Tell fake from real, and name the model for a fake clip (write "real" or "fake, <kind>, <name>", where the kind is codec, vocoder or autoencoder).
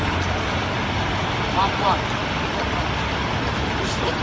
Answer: real